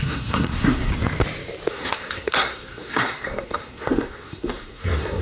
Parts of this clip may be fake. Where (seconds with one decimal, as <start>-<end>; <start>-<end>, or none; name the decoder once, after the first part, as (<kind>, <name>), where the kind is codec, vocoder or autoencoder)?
0.0-0.9 (codec, SNAC); 1.7-5.2